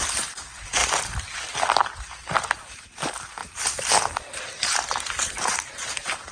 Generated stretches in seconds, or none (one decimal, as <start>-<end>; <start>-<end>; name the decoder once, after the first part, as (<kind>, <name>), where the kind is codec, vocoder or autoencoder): 0.0-0.8 (vocoder, BigVGAN v2); 2.6-3.4; 4.4-6.3